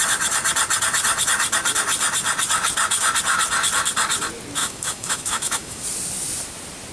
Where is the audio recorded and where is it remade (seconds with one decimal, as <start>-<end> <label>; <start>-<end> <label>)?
0.0-4.6 recorded; 4.6-5.8 remade; 5.8-6.9 recorded